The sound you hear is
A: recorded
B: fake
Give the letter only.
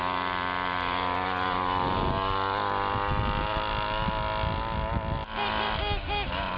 A